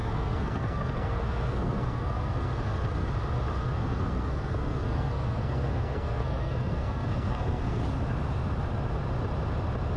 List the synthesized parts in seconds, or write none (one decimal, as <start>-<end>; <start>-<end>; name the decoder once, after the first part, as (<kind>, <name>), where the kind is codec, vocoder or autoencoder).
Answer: 0.0-3.1 (codec, SNAC); 3.5-7.8